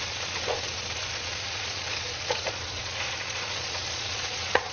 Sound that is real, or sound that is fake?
fake